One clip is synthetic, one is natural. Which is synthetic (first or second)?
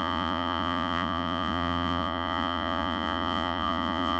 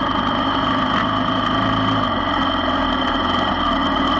first